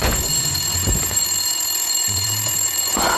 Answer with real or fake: fake